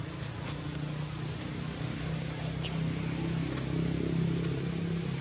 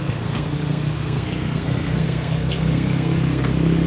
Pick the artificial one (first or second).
second